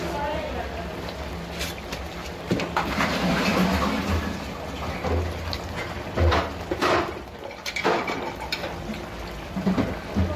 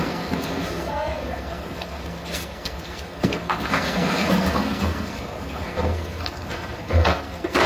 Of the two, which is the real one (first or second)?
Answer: first